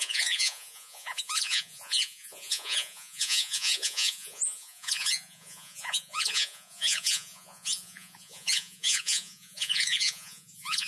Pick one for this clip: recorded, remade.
remade